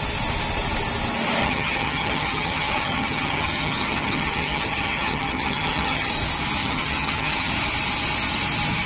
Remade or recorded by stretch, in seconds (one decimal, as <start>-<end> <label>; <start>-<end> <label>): 0.0-1.4 recorded; 1.4-6.1 remade; 6.1-6.6 recorded; 6.6-7.5 remade; 7.5-8.9 recorded